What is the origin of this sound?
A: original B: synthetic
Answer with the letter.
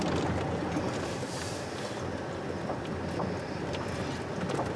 A